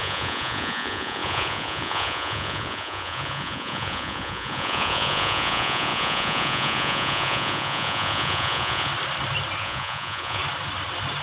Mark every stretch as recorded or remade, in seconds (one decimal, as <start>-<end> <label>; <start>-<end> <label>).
0.0-8.9 remade; 8.9-9.6 recorded; 9.6-10.4 remade; 10.4-11.2 recorded